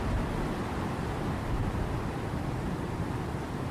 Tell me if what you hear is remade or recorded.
recorded